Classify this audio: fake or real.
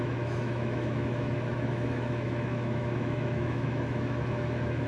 fake